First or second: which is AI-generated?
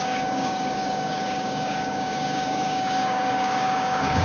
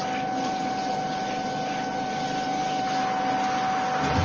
first